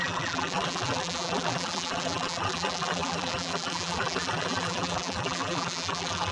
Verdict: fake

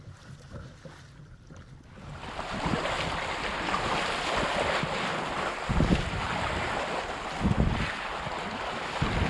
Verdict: real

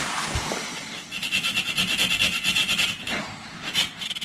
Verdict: real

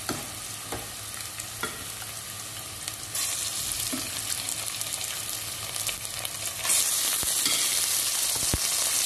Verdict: real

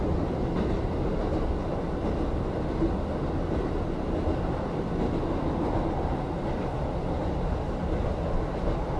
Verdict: real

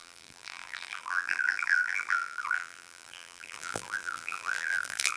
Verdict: fake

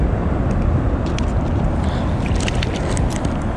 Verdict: real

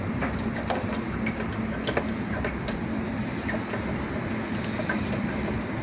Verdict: real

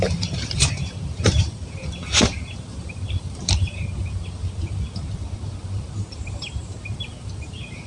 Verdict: fake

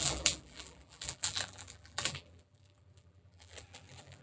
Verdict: fake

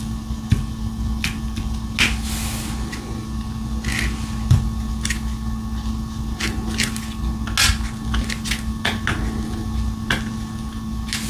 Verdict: real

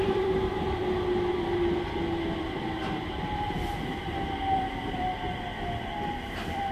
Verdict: fake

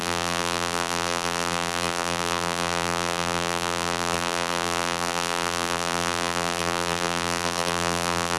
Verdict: fake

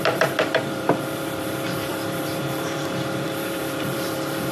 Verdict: fake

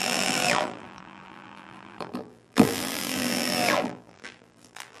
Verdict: fake